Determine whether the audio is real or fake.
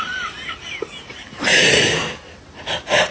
real